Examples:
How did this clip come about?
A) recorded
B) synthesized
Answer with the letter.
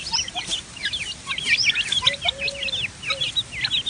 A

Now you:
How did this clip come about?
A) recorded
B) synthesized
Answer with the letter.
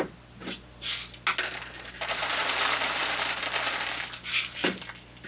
A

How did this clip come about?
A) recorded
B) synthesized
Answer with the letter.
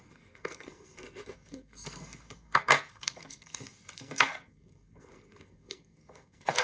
B